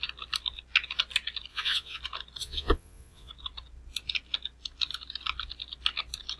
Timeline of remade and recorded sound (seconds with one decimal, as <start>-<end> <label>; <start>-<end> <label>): 0.0-1.5 recorded; 1.5-2.0 remade; 2.0-2.4 recorded; 2.4-3.3 remade; 3.3-6.4 recorded